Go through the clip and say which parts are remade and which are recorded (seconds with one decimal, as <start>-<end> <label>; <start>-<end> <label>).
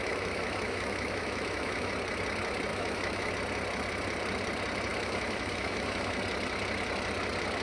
0.0-1.9 remade; 1.9-2.7 recorded; 2.7-3.3 remade; 3.3-4.9 recorded; 4.9-6.2 remade; 6.2-7.6 recorded